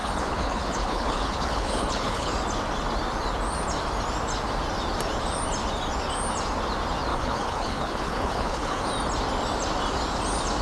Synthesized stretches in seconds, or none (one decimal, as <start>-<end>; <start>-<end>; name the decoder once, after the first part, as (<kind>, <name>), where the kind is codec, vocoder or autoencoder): 0.0-2.3 (codec, HILCodec); 7.1-8.8